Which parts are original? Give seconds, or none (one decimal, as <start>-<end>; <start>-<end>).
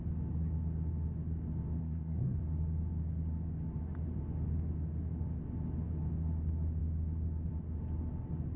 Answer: 0.0-1.8; 2.4-8.6